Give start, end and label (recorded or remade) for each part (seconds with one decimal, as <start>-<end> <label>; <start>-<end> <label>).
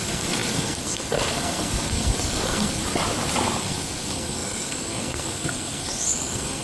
0.0-2.8 remade; 2.8-3.6 recorded; 3.6-6.6 remade